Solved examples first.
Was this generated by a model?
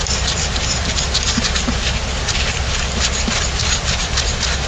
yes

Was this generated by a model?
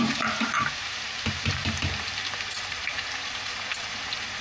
yes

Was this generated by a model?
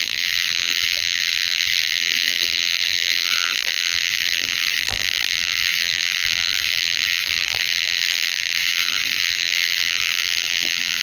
yes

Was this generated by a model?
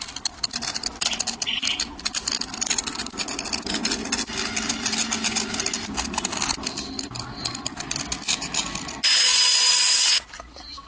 no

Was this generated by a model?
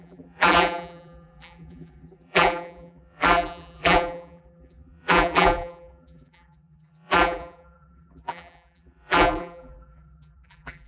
yes